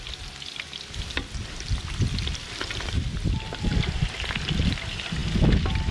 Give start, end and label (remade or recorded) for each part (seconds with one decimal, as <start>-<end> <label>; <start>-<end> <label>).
0.0-5.9 recorded